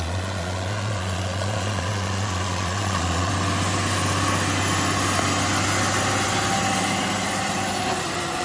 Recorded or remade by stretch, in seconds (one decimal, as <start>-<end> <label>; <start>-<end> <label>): 0.0-3.3 remade; 3.3-8.4 recorded